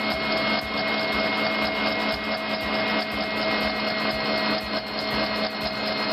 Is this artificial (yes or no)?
no